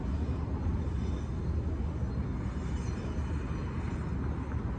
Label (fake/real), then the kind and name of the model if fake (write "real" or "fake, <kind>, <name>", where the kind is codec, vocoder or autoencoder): real